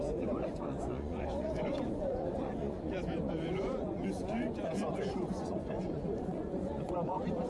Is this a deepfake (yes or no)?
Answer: yes